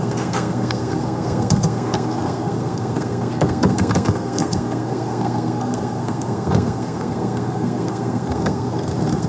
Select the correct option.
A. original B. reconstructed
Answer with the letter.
B